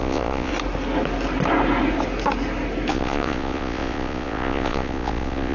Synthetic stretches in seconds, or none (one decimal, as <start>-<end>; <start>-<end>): 0.0-0.5; 2.9-5.5